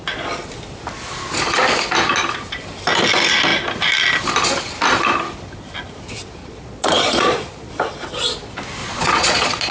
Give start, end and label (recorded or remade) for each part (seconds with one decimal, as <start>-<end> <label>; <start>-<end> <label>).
0.0-6.4 recorded; 6.4-7.7 remade; 7.7-8.8 recorded; 8.8-9.7 remade